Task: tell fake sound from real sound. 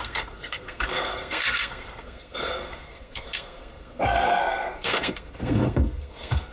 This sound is fake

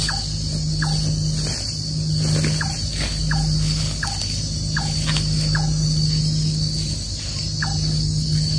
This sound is real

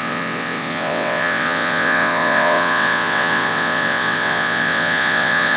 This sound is fake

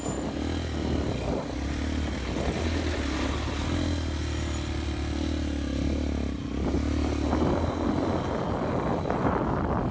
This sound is real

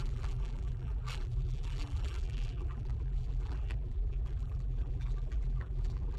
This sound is fake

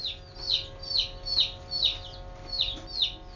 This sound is real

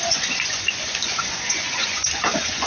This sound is fake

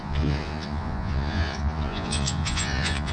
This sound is fake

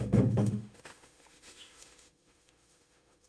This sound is fake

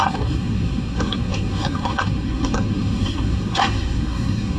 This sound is fake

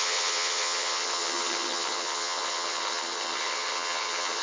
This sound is fake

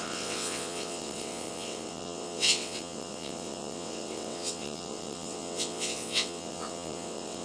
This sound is fake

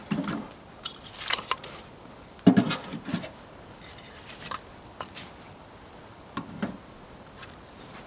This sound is real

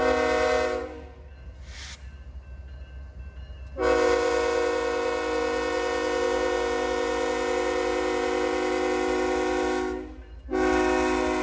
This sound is real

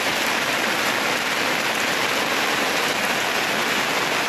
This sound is real